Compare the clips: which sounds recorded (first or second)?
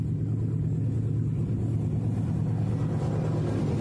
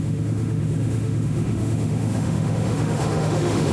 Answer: first